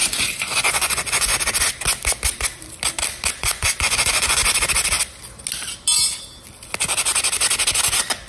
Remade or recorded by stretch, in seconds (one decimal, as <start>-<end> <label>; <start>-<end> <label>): 0.0-1.3 remade; 1.3-3.3 recorded; 3.3-4.4 remade; 4.4-8.3 recorded